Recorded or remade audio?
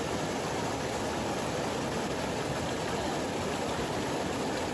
recorded